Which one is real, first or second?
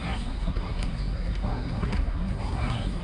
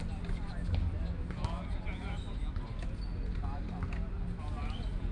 second